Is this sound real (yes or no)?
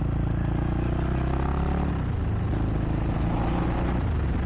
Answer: yes